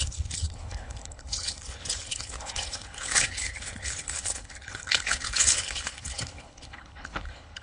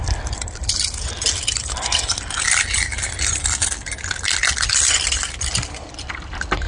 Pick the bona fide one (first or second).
second